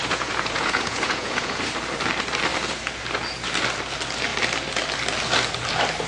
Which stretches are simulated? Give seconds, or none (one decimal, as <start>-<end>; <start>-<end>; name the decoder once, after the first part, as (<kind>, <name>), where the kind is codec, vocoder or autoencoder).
0.0-1.6 (vocoder, Vocos)